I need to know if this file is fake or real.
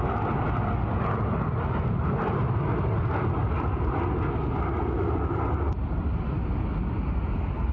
real